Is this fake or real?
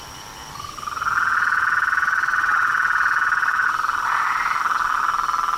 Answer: real